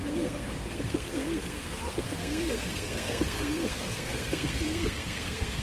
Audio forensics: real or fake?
fake